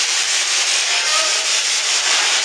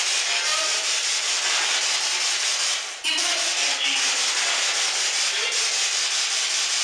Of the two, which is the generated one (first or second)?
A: first